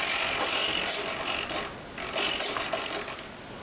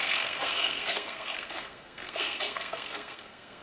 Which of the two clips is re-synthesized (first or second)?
second